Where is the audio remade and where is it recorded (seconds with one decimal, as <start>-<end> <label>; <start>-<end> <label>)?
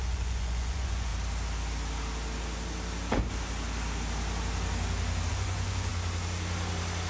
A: 0.0-1.1 remade; 1.1-5.3 recorded; 5.3-5.9 remade; 5.9-7.1 recorded